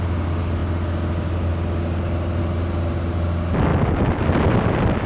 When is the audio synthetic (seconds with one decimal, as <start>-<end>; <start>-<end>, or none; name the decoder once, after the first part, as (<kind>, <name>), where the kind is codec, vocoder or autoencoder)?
none

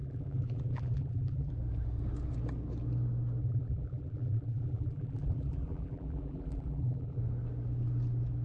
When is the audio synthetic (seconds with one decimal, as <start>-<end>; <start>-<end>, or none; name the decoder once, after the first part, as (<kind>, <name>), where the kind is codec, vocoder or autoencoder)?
0.0-1.5 (vocoder, BigVGAN v2); 3.4-7.2

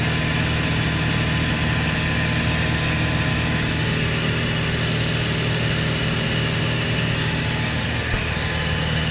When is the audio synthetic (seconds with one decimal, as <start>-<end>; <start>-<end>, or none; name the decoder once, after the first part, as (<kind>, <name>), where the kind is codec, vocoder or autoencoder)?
3.3-3.8 (autoencoder, DAC-VAE)

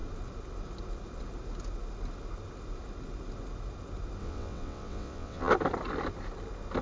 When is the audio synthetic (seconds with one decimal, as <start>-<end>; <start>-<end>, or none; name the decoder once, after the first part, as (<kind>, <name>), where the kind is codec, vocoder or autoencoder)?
4.2-5.5 (vocoder, WaveNeXt)

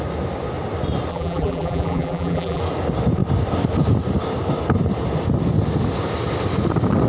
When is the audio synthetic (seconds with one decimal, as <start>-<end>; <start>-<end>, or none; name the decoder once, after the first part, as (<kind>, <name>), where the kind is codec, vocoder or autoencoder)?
1.1-2.6 (vocoder, BigVGAN v2)

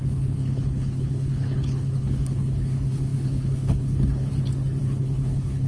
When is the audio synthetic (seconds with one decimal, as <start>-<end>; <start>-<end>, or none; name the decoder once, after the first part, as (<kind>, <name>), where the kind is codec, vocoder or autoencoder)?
0.0-4.3 (codec, HILCodec); 4.8-5.7

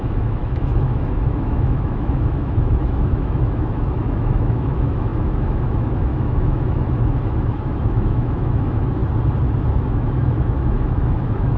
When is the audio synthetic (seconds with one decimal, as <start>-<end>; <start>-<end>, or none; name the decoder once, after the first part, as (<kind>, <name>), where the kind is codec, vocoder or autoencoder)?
0.0-9.0 (autoencoder, DAC-VAE); 9.7-11.6